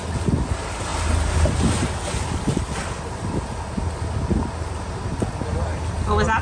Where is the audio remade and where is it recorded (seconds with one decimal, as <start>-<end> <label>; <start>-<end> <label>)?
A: 0.0-6.4 recorded